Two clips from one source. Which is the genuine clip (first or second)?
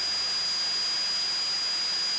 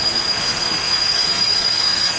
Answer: first